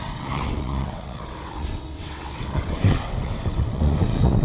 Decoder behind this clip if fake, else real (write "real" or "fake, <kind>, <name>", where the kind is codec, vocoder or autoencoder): fake, vocoder, WaveNeXt